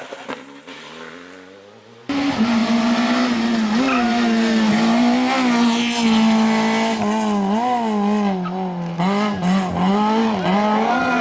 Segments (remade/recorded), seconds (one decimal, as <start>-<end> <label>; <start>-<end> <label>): 0.0-11.2 recorded